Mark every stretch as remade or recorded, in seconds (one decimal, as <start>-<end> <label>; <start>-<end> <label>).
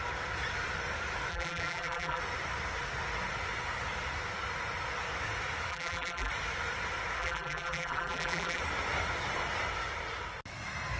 0.0-1.3 recorded; 1.3-2.2 remade; 2.2-5.7 recorded; 5.7-6.3 remade; 6.3-7.2 recorded; 7.2-8.6 remade; 8.6-11.0 recorded